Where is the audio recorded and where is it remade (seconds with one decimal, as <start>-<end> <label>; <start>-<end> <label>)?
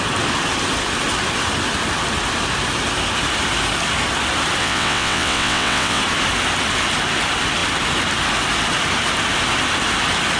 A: 0.0-4.6 recorded; 4.6-6.0 remade; 6.0-10.4 recorded